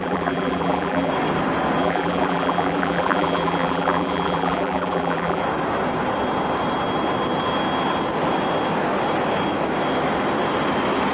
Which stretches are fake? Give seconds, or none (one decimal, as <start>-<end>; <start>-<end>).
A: 0.0-1.1; 1.8-5.4